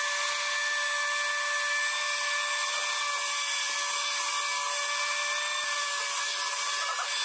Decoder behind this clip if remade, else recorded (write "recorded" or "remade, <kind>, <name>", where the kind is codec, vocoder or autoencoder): recorded